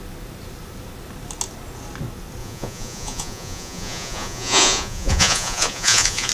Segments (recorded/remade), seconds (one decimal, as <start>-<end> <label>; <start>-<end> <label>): 0.0-2.4 recorded; 2.4-6.3 remade

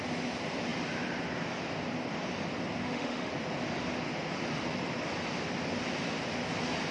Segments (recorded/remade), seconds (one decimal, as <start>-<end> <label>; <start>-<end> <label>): 0.0-2.8 recorded; 2.8-3.3 remade; 3.3-6.9 recorded

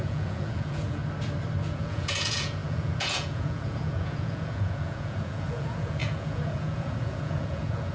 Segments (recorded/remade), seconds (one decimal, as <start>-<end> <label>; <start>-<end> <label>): 0.0-1.0 remade; 1.0-1.6 recorded; 1.6-7.9 remade

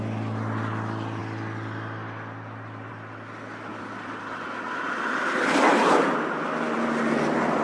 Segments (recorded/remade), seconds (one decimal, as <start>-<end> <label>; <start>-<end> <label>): 0.0-3.7 recorded; 3.7-6.8 remade; 6.8-7.6 recorded

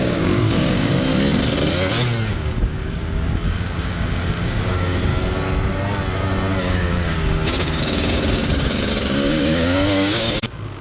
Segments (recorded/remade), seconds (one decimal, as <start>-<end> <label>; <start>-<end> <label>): 0.0-1.1 remade; 1.1-2.3 recorded; 2.3-5.1 remade; 5.1-6.6 recorded; 6.6-10.8 remade